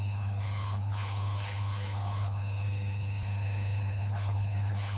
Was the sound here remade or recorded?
remade